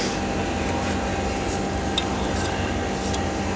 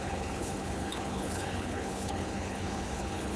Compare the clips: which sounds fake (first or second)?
second